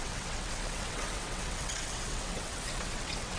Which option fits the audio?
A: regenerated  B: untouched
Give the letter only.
A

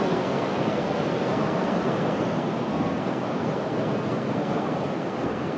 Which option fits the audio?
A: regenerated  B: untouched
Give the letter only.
A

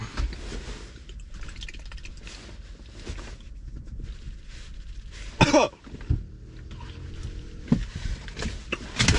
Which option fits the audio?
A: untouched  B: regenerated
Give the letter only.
A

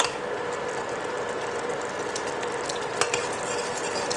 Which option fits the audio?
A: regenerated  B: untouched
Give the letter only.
B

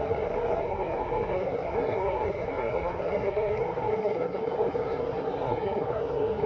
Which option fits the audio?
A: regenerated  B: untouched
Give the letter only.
A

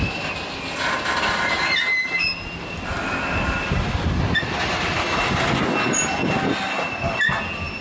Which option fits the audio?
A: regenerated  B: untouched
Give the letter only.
B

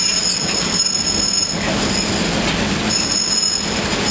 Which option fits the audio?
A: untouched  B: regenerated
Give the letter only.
A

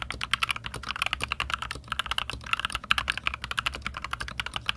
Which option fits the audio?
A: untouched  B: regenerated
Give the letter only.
A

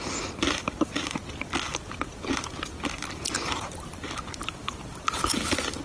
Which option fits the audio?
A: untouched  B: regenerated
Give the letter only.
B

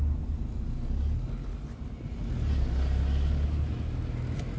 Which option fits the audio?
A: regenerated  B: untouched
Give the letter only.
B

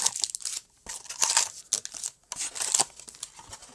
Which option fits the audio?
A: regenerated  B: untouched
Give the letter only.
B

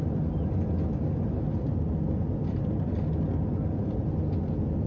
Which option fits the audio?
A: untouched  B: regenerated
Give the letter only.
A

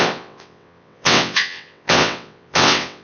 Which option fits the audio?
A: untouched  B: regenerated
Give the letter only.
B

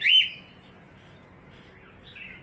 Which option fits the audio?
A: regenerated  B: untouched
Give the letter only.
B